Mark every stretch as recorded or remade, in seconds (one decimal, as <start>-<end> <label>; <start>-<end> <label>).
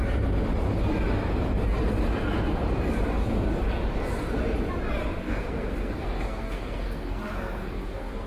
0.0-5.2 recorded; 5.2-8.3 remade